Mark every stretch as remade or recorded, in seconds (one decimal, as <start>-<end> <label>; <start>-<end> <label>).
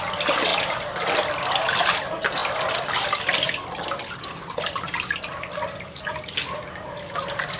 0.0-7.6 recorded